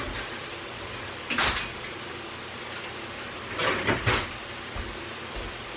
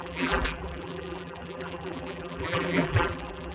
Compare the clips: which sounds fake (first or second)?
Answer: second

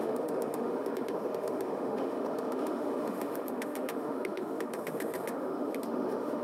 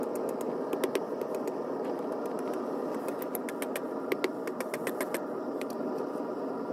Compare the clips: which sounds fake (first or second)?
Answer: first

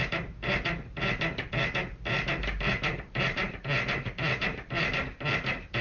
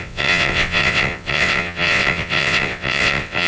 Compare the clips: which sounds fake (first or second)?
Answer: second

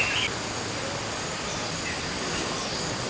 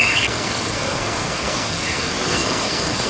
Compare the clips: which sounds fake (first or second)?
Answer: second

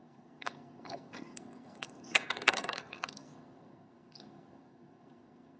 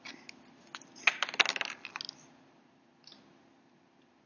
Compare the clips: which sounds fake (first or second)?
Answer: first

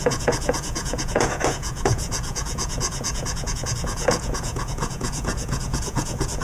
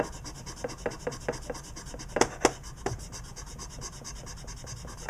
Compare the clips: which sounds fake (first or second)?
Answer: first